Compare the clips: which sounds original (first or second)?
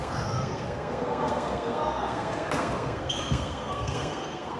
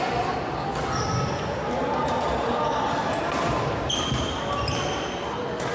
second